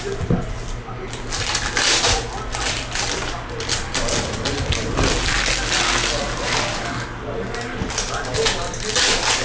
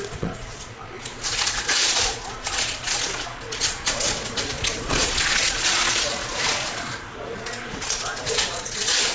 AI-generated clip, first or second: second